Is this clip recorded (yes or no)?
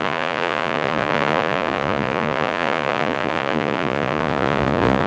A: no